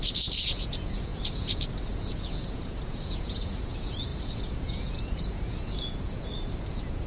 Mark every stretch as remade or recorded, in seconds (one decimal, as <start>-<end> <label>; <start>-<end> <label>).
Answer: 0.0-7.1 remade